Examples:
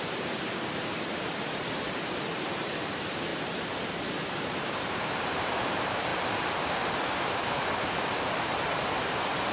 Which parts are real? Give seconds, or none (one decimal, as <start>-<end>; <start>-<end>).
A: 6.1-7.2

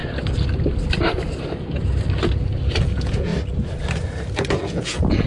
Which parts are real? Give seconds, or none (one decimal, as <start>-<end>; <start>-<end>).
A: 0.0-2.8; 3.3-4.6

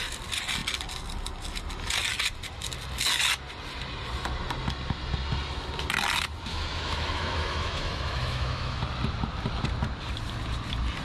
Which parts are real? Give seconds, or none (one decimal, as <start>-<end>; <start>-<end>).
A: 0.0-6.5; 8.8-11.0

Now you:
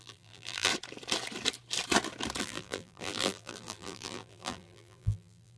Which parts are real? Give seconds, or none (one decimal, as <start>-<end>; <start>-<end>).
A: 0.7-2.4

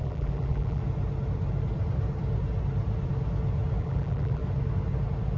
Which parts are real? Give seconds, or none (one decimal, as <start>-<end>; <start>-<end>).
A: 0.8-3.8; 4.4-5.4